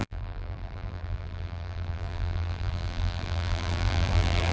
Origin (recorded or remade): remade